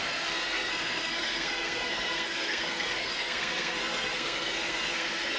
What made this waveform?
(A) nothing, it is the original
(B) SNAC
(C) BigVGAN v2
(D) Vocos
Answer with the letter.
B